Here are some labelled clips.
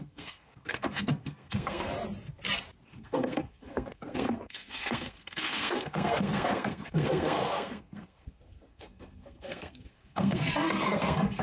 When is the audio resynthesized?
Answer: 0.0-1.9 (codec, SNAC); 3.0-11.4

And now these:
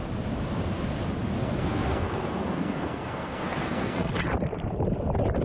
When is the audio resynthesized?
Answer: 1.4-4.1 (codec, SNAC)

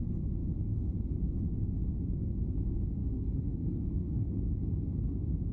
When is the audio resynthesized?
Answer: 3.0-4.3 (codec, SNAC)

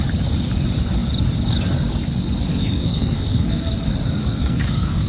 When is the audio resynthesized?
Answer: 2.5-3.7 (codec, SNAC); 4.2-5.1

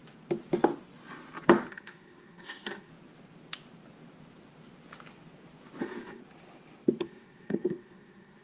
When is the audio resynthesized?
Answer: 1.7-2.9 (codec, SNAC); 5.8-6.2; 7.0-8.4

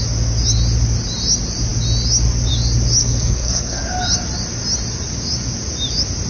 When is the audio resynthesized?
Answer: 3.0-3.8 (codec, SNAC)

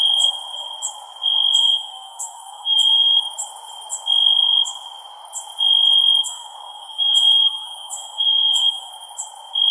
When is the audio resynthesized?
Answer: 1.6-3.2 (codec, SNAC); 6.2-8.9

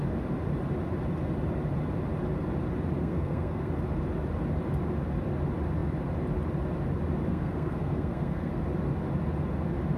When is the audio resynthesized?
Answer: 3.0-3.7 (codec, SNAC); 7.3-8.6